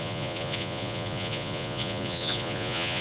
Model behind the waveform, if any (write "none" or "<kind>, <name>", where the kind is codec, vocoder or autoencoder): vocoder, Vocos